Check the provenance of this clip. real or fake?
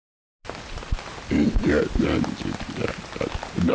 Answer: real